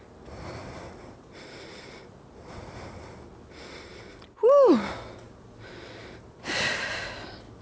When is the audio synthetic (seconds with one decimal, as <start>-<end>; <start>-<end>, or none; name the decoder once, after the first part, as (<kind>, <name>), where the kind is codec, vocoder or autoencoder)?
none